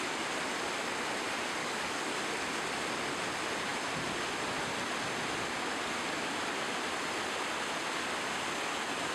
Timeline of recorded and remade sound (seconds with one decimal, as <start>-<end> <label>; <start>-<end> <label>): 0.0-1.6 recorded; 1.6-2.2 remade; 2.2-9.1 recorded